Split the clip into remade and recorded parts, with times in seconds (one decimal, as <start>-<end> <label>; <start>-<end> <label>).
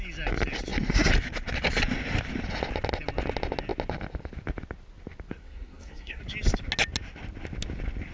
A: 0.0-5.4 recorded; 5.4-6.2 remade; 6.2-8.1 recorded